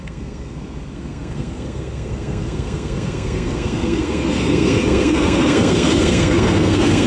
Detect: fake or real fake